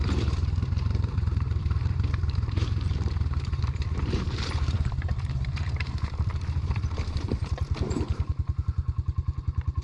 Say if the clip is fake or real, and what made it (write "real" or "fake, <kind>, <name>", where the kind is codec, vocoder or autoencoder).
fake, vocoder, BigVGAN v2